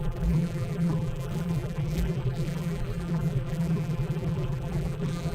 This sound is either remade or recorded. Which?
remade